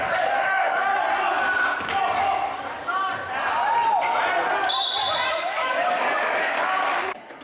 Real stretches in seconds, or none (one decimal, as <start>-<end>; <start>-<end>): 0.9-5.3